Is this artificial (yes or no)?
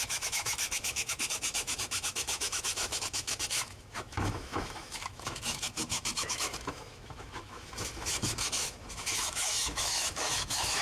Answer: yes